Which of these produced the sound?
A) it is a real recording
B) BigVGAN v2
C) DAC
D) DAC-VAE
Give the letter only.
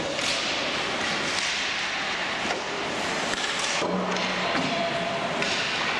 A